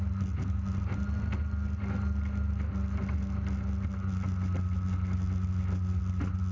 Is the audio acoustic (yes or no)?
yes